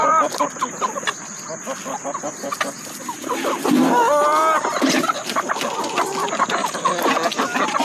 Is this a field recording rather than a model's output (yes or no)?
yes